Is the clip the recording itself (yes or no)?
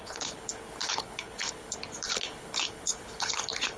no